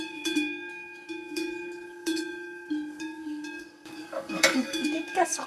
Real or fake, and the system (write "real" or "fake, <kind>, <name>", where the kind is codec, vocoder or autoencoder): fake, codec, DAC